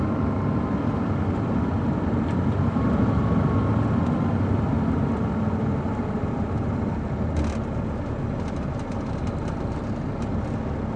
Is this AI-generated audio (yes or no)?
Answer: no